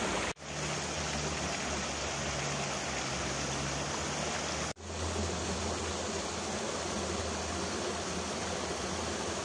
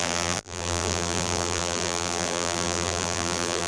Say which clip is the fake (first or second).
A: second